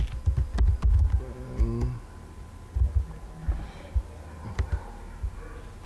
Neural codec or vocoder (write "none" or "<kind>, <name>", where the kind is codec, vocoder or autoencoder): none